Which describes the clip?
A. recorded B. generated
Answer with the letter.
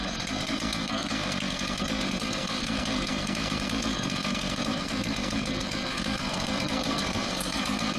B